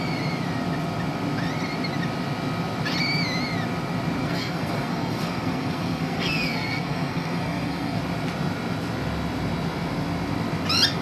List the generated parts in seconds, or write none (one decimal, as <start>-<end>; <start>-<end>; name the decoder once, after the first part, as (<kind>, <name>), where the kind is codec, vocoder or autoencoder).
4.2-8.0 (codec, SNAC)